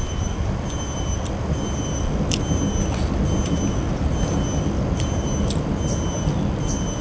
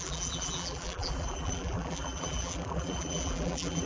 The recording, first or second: first